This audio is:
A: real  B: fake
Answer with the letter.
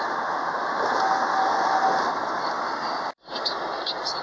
A